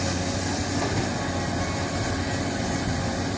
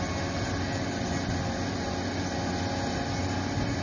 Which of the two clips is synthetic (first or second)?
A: first